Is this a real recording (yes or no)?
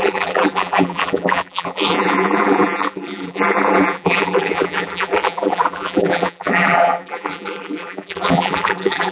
no